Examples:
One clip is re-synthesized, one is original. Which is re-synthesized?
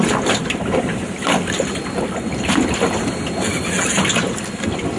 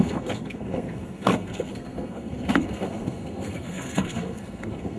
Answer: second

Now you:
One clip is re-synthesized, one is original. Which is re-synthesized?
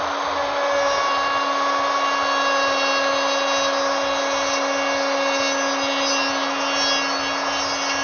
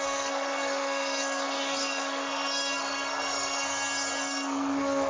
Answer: second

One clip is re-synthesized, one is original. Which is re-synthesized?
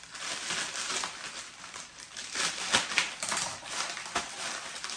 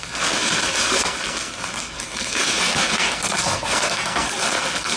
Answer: second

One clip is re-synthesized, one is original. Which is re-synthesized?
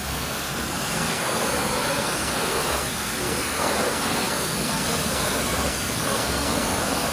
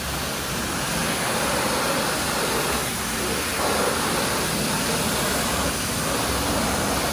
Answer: first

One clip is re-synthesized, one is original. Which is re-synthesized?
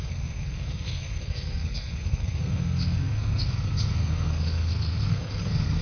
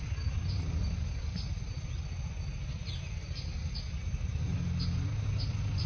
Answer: first